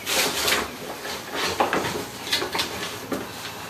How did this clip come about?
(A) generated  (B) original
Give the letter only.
B